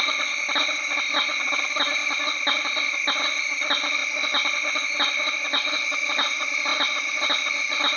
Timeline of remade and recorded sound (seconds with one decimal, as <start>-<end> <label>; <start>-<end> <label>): 0.0-4.0 remade; 4.0-5.3 recorded; 5.3-6.7 remade; 6.7-7.6 recorded; 7.6-8.0 remade